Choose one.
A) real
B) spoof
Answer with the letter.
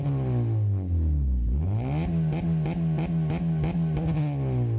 A